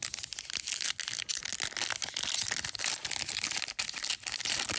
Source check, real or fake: real